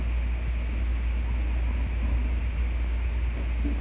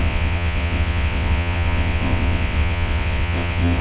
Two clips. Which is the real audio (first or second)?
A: first